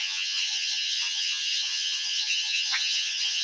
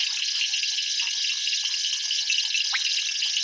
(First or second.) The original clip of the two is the second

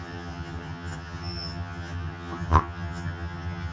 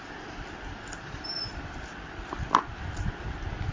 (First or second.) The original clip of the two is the second